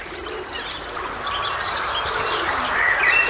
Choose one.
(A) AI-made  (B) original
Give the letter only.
A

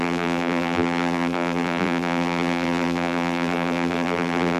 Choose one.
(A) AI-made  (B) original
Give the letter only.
A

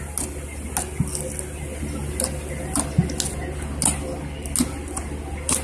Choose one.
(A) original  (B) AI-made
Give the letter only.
A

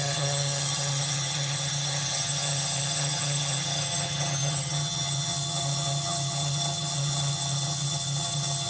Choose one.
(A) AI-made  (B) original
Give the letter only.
A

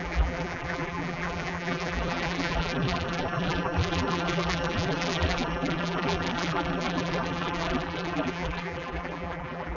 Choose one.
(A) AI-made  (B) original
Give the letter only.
A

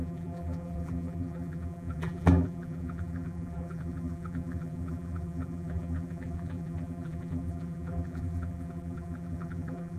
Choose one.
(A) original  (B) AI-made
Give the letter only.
B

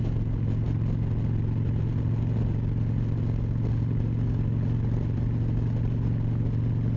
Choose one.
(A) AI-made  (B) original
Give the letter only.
B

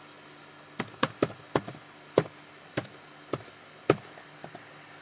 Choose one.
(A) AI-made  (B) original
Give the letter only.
B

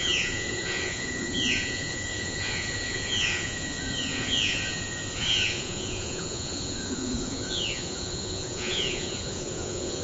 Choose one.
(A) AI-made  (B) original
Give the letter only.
A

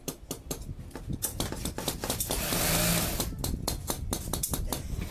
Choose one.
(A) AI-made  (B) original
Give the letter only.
B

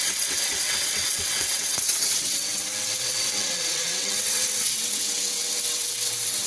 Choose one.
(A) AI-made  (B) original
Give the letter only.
A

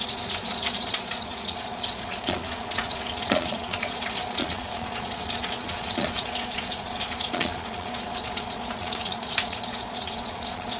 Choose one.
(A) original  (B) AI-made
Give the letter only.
B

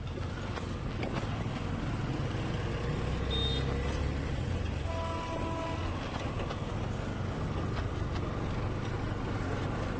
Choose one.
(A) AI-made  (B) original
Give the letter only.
B